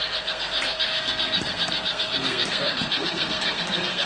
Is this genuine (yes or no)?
no